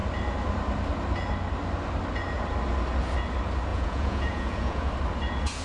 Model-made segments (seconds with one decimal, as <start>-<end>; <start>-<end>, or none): 3.7-4.9